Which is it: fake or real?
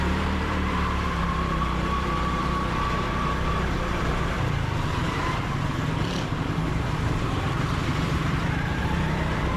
fake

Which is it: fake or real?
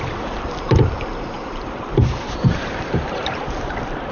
fake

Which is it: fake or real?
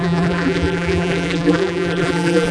fake